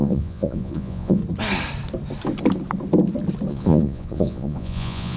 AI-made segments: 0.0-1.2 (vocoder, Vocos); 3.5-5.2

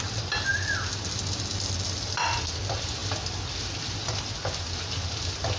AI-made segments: none

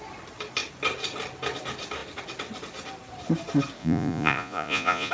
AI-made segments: 3.8-5.1 (vocoder, Vocos)

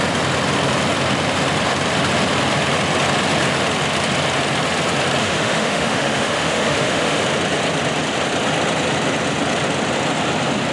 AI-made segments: 5.2-7.2 (autoencoder, DAC-VAE)

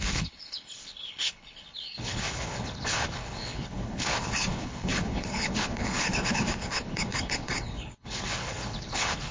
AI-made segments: 0.0-9.3 (codec, HILCodec)

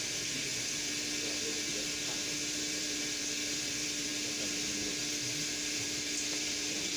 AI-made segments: 0.0-0.5 (vocoder, BigVGAN v2); 2.6-4.1; 5.8-7.0